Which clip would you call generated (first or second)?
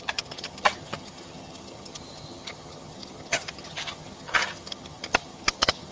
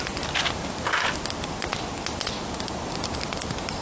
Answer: first